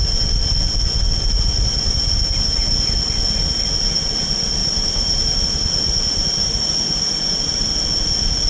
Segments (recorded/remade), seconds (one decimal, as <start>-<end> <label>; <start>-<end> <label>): 0.0-4.6 recorded; 4.6-5.4 remade; 5.4-6.4 recorded; 6.4-7.6 remade; 7.6-8.5 recorded